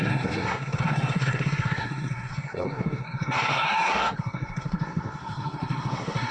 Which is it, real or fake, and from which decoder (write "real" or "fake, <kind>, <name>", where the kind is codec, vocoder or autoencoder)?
fake, codec, SNAC